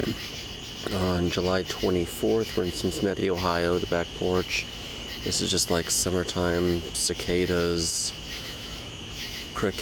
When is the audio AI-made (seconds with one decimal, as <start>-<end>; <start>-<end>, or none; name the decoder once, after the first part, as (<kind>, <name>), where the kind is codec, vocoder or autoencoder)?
1.7-4.9 (autoencoder, DAC-VAE); 5.5-9.8